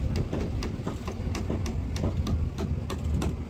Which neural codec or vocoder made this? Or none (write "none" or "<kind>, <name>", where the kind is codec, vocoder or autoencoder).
none